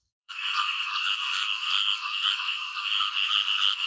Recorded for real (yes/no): no